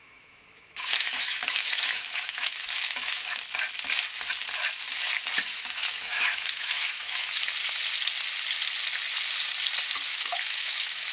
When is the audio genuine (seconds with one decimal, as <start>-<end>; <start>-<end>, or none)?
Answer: 3.4-5.5; 7.4-10.1